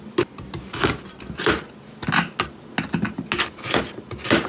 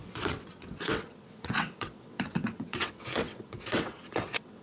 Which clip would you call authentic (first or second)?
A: first